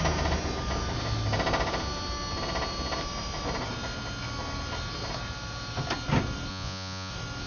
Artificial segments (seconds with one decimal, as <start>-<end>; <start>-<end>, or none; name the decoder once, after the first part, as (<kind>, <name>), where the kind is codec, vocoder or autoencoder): 6.5-7.1 (vocoder, Vocos)